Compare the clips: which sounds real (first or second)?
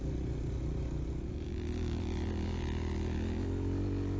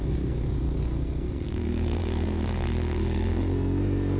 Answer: first